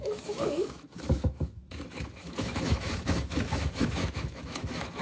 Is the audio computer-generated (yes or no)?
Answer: yes